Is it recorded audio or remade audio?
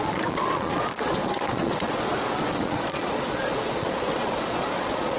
remade